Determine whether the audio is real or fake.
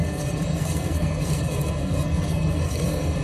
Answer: fake